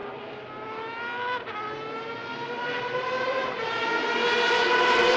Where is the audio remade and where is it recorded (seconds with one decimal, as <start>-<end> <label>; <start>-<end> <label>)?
0.0-2.0 recorded; 2.0-5.2 remade